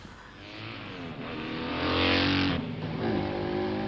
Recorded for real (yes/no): yes